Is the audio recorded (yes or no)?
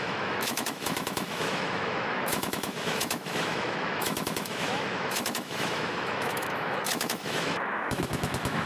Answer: no